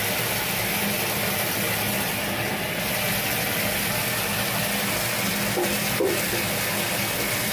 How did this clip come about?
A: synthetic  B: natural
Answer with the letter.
B